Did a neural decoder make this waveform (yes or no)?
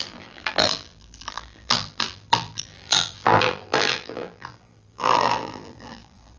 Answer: yes